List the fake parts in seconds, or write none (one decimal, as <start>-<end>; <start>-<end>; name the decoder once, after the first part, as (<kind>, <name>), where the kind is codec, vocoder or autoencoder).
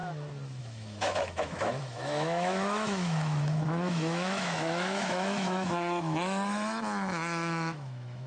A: 0.6-8.3 (autoencoder, DAC-VAE)